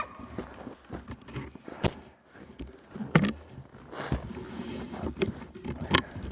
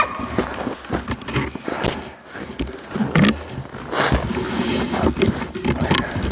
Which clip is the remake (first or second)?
first